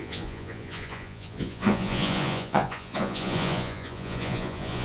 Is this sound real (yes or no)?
no